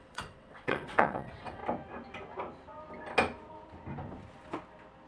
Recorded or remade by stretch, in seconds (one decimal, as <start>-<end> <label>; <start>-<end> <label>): 0.0-1.6 remade; 1.6-5.1 recorded